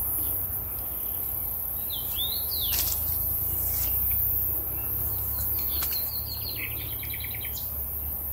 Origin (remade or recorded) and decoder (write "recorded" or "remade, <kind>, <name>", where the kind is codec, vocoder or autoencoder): recorded